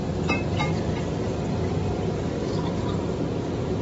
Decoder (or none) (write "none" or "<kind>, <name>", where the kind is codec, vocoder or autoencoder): none